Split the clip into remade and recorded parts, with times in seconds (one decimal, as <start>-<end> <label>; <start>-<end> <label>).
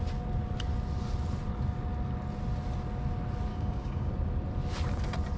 0.0-3.5 recorded; 3.5-4.1 remade; 4.1-5.4 recorded